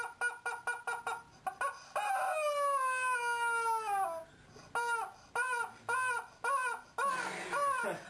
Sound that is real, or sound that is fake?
real